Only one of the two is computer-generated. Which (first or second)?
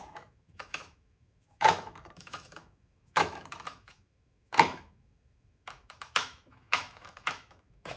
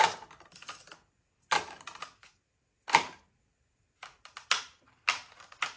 first